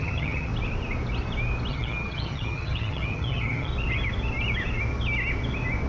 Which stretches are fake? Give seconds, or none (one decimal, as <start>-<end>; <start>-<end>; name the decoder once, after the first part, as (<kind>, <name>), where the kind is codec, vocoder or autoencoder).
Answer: 0.0-0.5 (vocoder, HiFi-GAN); 1.7-3.7